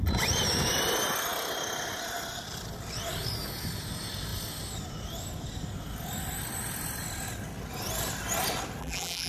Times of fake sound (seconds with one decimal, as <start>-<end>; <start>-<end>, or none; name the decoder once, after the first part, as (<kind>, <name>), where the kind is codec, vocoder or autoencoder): 8.8-9.3 (vocoder, BigVGAN v2)